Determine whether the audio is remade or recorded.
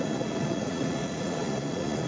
remade